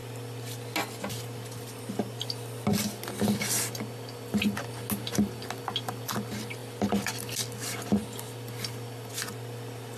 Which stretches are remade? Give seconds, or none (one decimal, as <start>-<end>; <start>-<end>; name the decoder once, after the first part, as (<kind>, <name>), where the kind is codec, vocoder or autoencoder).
none

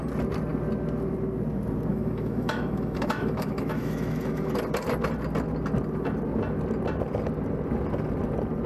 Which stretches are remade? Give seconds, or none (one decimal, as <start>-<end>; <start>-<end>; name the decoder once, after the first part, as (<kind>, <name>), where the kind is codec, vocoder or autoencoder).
1.9-4.5 (autoencoder, DAC-VAE)

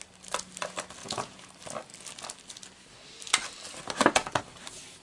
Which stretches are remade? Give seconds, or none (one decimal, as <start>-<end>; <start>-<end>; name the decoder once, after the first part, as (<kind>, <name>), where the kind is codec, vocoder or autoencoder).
1.0-1.5 (vocoder, Vocos)

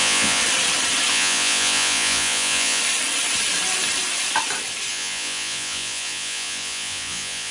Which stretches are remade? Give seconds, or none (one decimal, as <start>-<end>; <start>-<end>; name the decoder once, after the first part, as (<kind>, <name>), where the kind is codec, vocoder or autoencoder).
0.0-0.4 (vocoder, Vocos); 1.1-2.8; 4.9-7.5

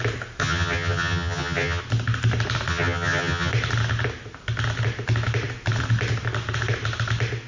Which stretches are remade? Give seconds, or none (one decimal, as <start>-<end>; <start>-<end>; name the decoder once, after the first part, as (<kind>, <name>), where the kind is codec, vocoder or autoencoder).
0.4-1.8 (vocoder, HiFi-GAN); 2.7-3.5

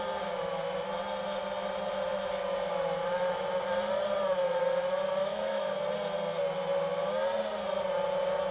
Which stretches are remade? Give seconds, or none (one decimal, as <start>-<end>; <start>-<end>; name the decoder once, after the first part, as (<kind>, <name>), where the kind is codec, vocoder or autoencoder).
5.2-5.8 (autoencoder, DAC-VAE)

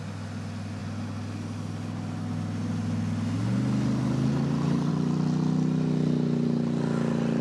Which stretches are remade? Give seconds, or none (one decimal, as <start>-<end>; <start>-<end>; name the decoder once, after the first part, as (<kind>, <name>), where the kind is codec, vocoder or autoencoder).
none

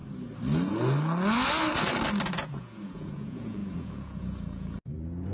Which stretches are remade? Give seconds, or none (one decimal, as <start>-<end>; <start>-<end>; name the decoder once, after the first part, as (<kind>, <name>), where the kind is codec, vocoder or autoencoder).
2.3-5.3 (vocoder, Vocos)